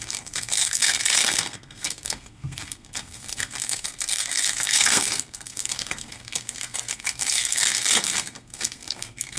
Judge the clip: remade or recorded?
remade